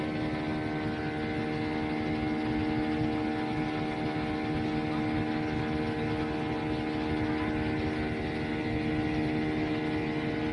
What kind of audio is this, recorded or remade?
recorded